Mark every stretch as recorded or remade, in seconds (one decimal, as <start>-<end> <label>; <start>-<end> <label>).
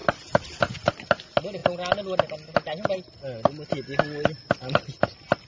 0.0-5.5 recorded